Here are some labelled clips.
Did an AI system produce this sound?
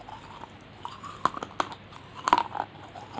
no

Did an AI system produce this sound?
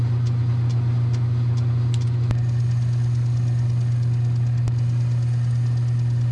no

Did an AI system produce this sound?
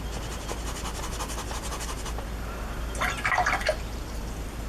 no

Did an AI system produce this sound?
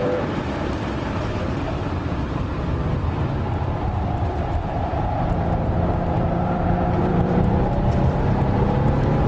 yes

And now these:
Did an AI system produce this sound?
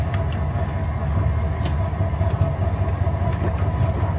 no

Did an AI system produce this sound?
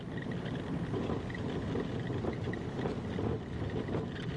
no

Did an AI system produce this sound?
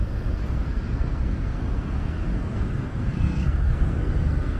yes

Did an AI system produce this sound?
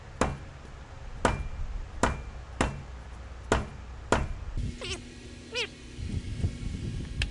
no